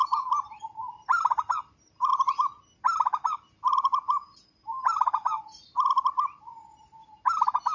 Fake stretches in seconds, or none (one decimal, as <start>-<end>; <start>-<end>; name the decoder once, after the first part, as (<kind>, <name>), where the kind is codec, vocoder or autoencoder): 0.0-2.1 (vocoder, BigVGAN v2); 4.3-5.1